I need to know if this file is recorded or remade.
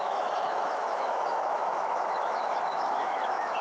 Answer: remade